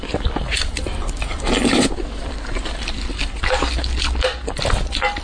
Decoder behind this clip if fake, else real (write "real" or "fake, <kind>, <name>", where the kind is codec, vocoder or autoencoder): real